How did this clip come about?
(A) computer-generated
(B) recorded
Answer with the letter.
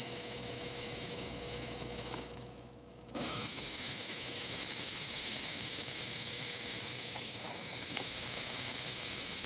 A